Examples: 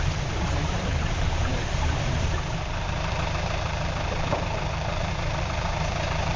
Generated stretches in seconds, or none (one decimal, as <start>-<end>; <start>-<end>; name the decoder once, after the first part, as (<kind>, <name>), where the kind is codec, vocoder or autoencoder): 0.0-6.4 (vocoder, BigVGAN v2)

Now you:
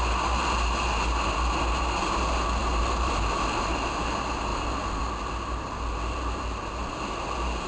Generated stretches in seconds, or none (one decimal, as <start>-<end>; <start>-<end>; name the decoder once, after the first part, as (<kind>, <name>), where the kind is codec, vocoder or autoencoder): 2.6-3.9 (vocoder, BigVGAN v2); 4.5-5.0

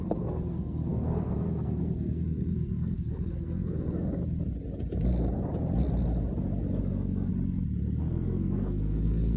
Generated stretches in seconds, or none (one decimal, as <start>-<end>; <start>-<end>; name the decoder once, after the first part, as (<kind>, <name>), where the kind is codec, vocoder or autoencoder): 0.0-4.2 (codec, SNAC); 6.8-7.3; 8.0-9.4

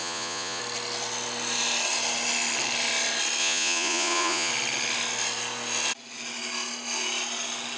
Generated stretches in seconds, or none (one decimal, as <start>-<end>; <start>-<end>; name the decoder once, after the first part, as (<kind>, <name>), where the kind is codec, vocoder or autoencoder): 0.0-0.6 (vocoder, Vocos); 3.4-4.5